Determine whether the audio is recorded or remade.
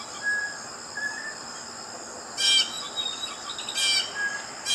recorded